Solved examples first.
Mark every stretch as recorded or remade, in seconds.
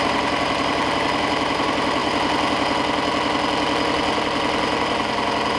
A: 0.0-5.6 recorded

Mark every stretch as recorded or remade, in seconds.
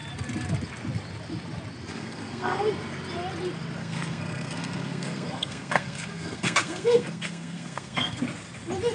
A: 0.0-1.9 recorded; 1.9-2.6 remade; 2.6-3.8 recorded; 3.8-8.2 remade; 8.2-8.9 recorded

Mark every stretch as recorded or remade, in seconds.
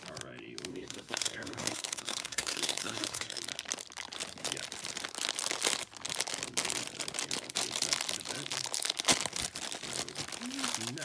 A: 0.0-0.7 recorded; 0.7-3.4 remade; 3.4-11.0 recorded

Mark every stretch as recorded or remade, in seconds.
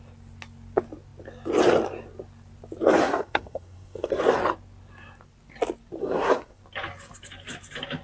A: 0.0-3.0 recorded; 3.0-4.2 remade; 4.2-6.0 recorded; 6.0-6.6 remade; 6.6-8.0 recorded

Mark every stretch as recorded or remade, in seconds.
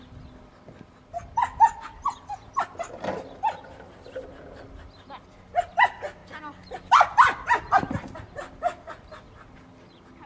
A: 0.0-10.3 recorded